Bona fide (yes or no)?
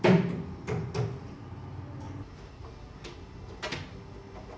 yes